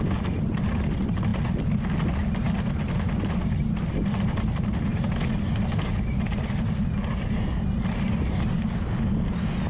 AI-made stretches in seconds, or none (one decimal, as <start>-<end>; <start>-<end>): none